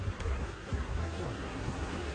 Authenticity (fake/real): fake